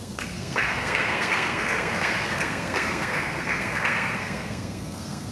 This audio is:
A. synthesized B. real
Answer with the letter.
A